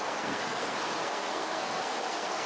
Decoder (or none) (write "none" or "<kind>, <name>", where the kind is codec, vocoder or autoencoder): codec, SNAC